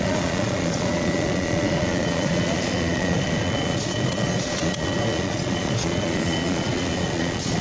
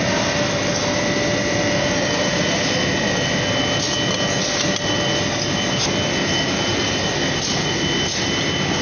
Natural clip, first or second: second